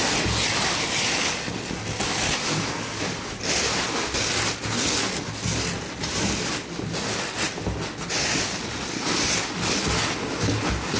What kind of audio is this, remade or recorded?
recorded